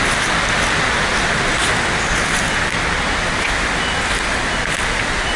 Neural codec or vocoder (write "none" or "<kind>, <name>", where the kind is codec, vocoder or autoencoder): none